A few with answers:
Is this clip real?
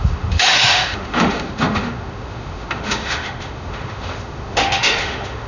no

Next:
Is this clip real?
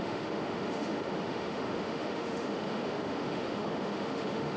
no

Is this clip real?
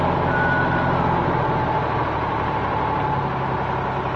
yes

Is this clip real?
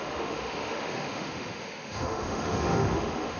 no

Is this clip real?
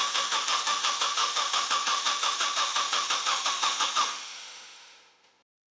no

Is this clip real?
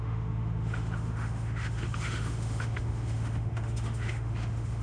no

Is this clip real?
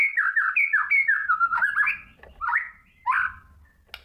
yes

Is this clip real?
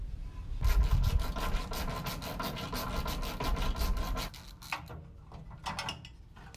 yes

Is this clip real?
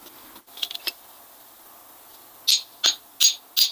yes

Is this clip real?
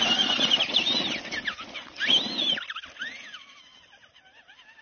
yes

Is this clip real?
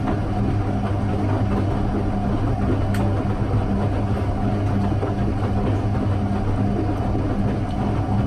yes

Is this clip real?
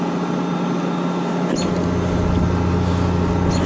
yes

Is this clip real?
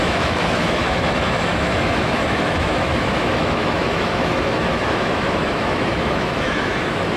no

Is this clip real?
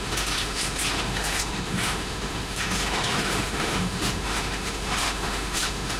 no